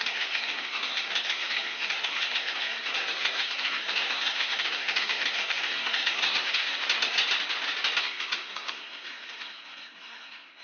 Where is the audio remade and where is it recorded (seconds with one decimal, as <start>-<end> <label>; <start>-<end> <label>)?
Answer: 0.0-7.2 remade; 7.2-8.0 recorded; 8.0-10.6 remade